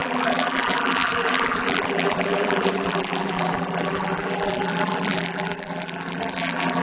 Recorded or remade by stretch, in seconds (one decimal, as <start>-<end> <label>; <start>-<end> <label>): 0.0-6.8 remade